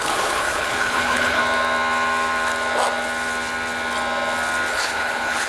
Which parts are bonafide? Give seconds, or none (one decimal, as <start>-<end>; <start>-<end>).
1.4-4.7